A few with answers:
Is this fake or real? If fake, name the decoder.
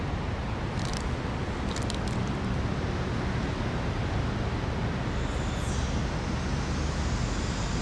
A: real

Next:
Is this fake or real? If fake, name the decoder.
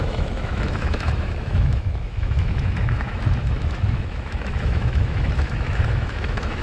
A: fake, autoencoder, DAC-VAE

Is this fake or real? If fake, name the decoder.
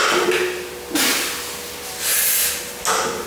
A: real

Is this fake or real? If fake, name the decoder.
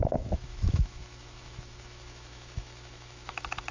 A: fake, autoencoder, DAC-VAE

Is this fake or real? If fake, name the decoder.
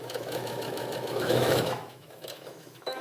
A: fake, autoencoder, DAC-VAE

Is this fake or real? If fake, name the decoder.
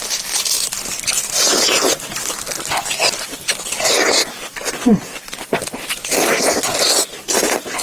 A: real